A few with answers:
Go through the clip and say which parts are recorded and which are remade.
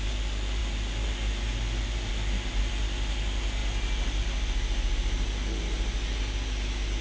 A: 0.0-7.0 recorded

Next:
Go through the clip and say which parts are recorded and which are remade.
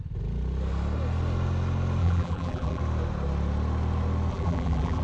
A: 0.0-2.0 recorded; 2.0-2.8 remade; 2.8-4.3 recorded; 4.3-5.0 remade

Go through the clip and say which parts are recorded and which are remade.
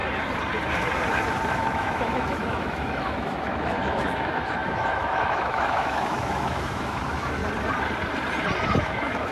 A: 0.0-1.5 recorded; 1.5-7.4 remade; 7.4-8.8 recorded; 8.8-9.3 remade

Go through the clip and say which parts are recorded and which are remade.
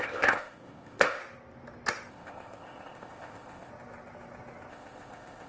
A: 0.0-1.2 remade; 1.2-2.1 recorded; 2.1-3.7 remade; 3.7-4.7 recorded; 4.7-5.5 remade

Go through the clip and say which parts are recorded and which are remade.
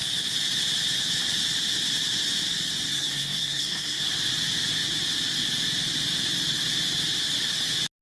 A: 0.0-2.9 recorded; 2.9-4.0 remade; 4.0-8.0 recorded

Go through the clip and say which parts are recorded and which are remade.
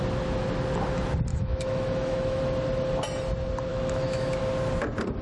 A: 0.0-1.3 recorded; 1.3-2.4 remade; 2.4-3.7 recorded; 3.7-4.4 remade; 4.4-5.2 recorded